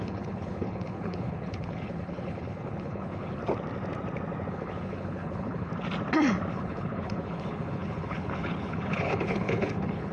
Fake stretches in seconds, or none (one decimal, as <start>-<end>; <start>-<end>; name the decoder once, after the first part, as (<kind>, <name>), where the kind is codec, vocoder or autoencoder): 0.0-3.4 (codec, HILCodec); 4.5-5.7; 6.5-10.1